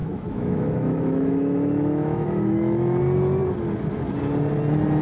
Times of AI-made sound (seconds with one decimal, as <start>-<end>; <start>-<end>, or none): 0.0-3.0